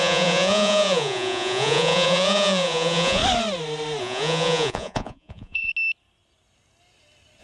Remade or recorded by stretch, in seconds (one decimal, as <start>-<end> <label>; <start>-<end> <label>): 0.0-3.2 remade; 3.2-4.0 recorded; 4.0-5.7 remade; 5.7-7.4 recorded